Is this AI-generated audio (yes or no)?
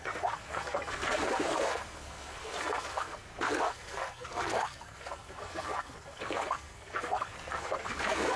yes